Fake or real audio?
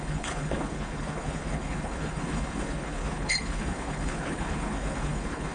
fake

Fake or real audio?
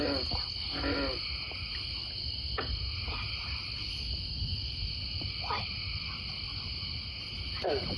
real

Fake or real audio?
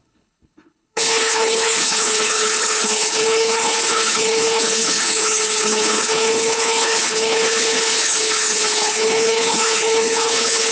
fake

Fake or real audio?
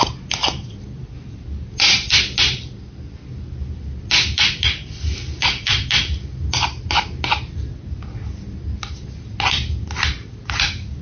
real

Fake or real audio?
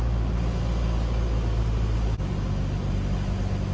real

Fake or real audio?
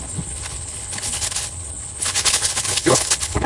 fake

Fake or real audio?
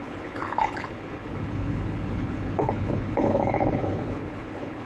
fake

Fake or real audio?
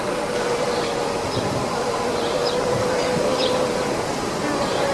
real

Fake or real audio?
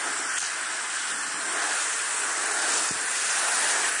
real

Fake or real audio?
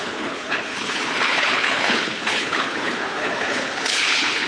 fake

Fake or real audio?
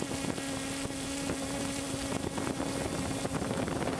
real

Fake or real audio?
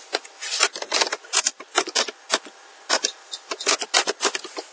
real